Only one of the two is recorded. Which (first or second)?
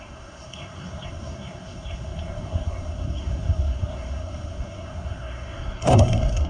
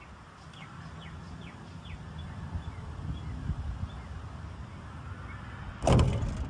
second